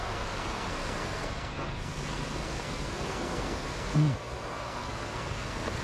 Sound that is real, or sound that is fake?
fake